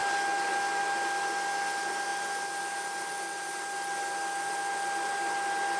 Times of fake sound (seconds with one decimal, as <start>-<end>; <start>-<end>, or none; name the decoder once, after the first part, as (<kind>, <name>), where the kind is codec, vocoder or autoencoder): none